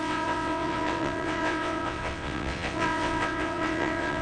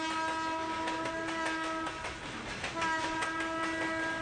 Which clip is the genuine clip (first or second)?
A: second